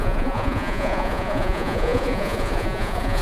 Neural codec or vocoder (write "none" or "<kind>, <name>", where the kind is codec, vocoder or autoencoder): vocoder, Vocos